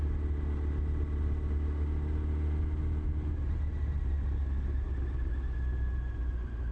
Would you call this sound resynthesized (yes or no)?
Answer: no